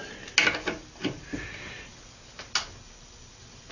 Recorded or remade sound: recorded